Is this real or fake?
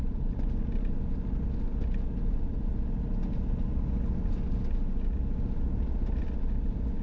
real